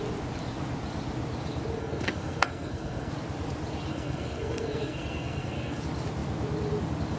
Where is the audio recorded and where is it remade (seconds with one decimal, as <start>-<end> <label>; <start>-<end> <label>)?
0.0-1.8 recorded; 1.8-3.1 remade; 3.1-3.9 recorded; 3.9-5.8 remade; 5.8-7.2 recorded